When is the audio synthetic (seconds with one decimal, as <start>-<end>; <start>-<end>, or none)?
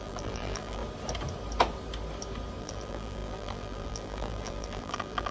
0.0-0.8; 2.6-5.3